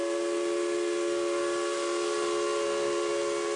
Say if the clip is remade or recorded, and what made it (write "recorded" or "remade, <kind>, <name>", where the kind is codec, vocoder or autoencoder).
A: recorded